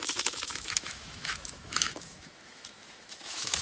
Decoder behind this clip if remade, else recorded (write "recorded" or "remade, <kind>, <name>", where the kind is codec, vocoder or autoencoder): remade, autoencoder, DAC-VAE